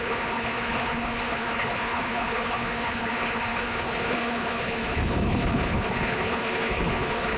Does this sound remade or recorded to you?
remade